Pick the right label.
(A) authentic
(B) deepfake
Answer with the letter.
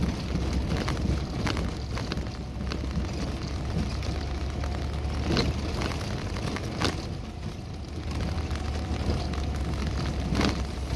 A